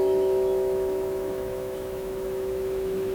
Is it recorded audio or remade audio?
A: remade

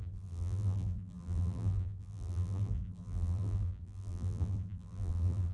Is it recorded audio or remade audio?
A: remade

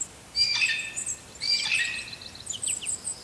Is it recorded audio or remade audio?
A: recorded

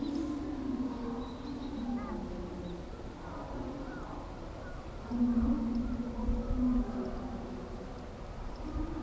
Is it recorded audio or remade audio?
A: recorded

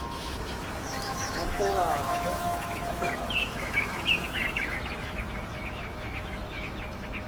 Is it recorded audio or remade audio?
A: remade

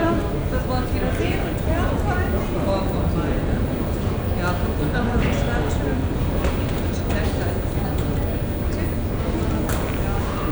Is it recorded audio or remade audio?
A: recorded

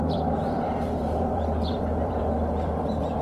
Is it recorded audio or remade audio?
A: remade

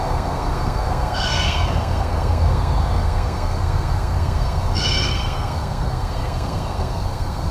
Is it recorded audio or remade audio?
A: remade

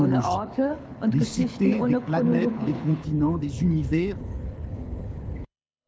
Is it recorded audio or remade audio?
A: remade